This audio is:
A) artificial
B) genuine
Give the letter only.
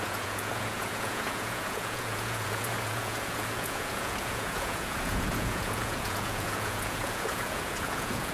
A